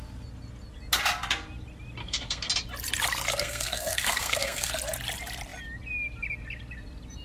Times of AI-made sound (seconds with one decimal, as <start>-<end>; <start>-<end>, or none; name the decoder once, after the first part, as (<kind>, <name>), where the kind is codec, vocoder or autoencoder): 2.0-2.5 (codec, SNAC); 3.3-4.7